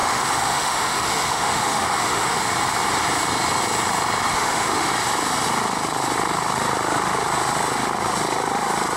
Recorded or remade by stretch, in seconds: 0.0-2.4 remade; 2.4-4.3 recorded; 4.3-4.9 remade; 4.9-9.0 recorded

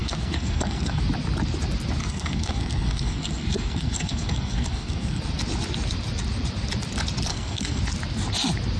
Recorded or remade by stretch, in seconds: 0.0-1.0 remade; 1.0-2.0 recorded; 2.0-5.2 remade; 5.2-7.3 recorded; 7.3-7.8 remade; 7.8-8.8 recorded

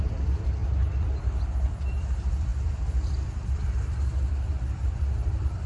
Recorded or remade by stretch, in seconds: 0.0-5.7 remade